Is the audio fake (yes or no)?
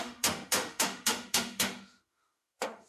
yes